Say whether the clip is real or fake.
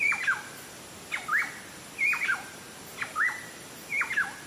real